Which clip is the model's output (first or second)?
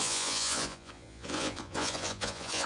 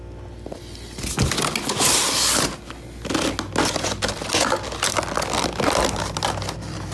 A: first